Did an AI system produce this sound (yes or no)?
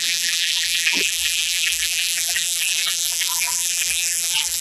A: yes